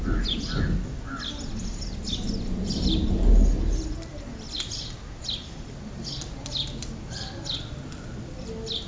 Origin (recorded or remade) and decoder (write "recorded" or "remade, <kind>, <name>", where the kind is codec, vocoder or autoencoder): recorded